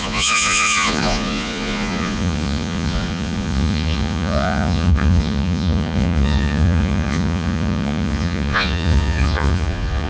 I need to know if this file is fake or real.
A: fake